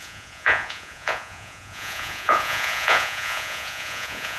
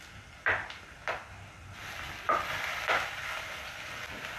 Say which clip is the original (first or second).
second